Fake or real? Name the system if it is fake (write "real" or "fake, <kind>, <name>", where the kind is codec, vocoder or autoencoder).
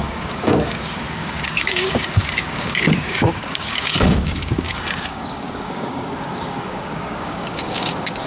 fake, codec, DAC